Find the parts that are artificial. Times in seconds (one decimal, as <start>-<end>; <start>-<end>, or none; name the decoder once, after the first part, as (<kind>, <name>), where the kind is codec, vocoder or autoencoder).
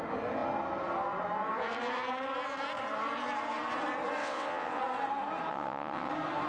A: 4.2-4.8 (vocoder, WaveNeXt); 5.5-6.1